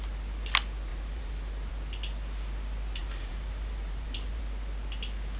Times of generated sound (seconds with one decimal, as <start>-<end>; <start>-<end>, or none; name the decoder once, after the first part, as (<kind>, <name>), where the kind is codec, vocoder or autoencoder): 0.9-1.7 (vocoder, BigVGAN v2); 3.0-4.4